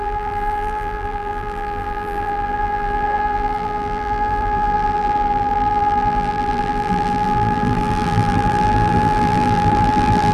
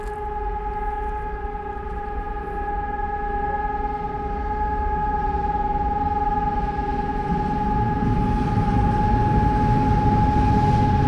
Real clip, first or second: second